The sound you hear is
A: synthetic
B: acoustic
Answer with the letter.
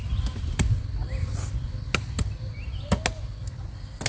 B